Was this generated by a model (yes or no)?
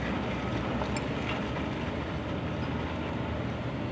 no